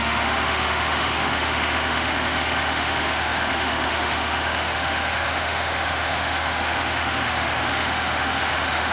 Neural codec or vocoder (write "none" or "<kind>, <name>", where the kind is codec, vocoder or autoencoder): autoencoder, DAC-VAE